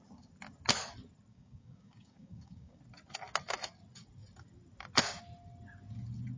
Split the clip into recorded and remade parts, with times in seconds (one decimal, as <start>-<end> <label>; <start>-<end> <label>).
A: 0.0-1.3 recorded; 1.3-2.8 remade; 2.8-6.4 recorded